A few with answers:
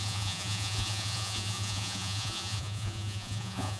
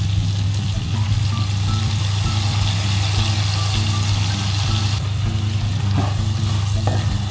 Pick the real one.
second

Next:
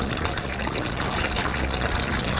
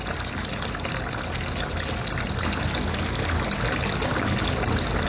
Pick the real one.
second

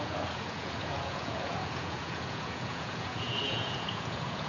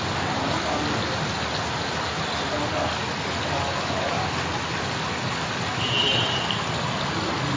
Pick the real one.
second